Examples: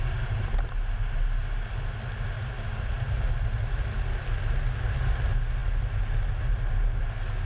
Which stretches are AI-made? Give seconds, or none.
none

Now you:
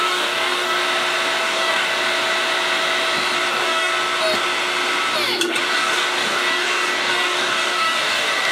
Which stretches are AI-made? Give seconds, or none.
0.0-0.8; 1.4-2.0; 3.5-3.9; 5.7-8.5

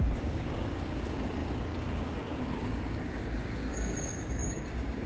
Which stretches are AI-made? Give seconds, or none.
0.0-5.1

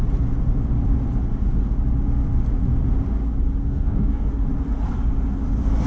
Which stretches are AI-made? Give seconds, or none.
3.6-4.3

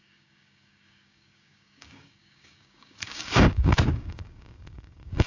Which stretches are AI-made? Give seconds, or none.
0.0-5.3